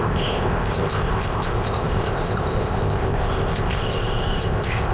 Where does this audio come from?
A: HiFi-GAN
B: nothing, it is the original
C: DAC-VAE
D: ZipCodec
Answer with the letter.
D